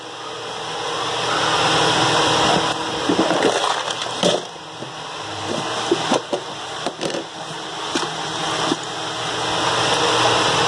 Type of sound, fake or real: real